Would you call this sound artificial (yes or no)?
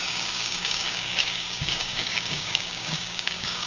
yes